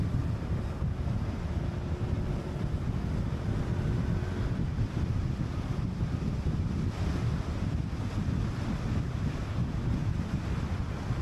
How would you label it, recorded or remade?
recorded